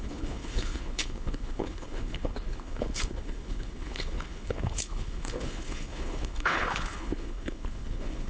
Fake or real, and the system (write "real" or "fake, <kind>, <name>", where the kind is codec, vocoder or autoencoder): fake, codec, HILCodec